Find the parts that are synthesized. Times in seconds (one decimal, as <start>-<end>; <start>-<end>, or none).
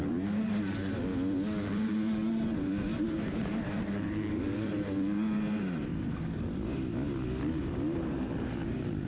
0.0-1.1; 1.7-5.9; 7.6-9.1